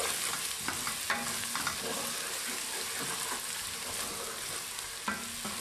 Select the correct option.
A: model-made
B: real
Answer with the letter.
B